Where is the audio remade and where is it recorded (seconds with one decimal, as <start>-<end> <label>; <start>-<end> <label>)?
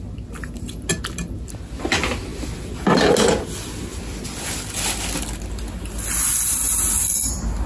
0.0-7.7 recorded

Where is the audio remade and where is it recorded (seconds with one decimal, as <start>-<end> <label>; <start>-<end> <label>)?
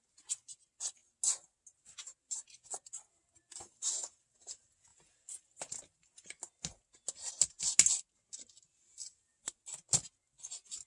0.0-10.9 recorded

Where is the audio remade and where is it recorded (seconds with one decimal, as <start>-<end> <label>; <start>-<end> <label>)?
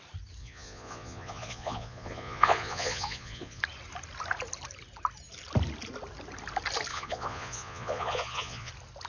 0.0-0.4 recorded; 0.4-3.6 remade; 3.6-6.9 recorded; 6.9-8.7 remade; 8.7-9.1 recorded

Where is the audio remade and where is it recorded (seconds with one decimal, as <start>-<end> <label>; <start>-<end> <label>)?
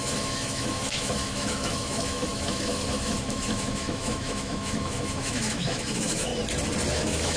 0.0-6.3 remade; 6.3-6.9 recorded; 6.9-7.4 remade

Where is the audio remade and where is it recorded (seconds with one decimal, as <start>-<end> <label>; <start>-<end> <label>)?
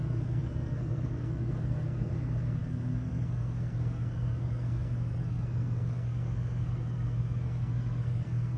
0.0-8.6 remade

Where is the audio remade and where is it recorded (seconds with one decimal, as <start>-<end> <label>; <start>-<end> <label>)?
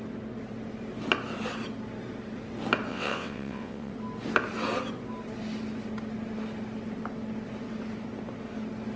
0.0-2.9 recorded; 2.9-3.9 remade; 3.9-9.0 recorded